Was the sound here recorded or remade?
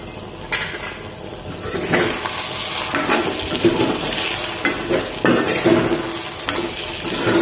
recorded